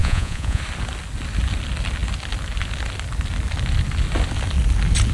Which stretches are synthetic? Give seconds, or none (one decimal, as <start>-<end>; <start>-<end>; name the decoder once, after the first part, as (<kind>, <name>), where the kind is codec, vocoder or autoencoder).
0.0-0.6 (vocoder, Vocos)